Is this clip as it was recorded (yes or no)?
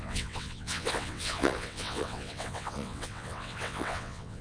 no